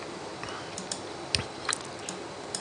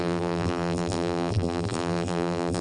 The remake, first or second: second